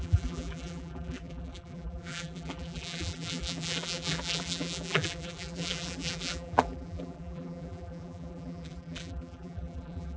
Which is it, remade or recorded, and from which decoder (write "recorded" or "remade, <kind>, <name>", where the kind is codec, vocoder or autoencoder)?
remade, vocoder, BigVGAN v2